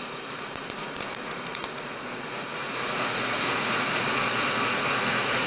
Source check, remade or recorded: remade